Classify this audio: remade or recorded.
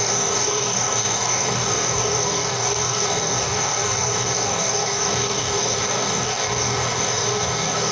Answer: remade